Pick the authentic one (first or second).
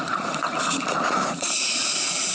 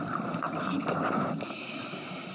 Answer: second